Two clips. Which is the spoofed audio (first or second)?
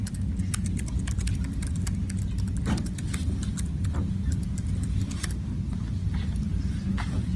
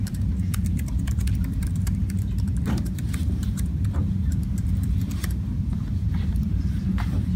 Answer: second